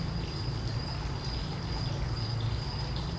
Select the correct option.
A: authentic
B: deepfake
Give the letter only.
A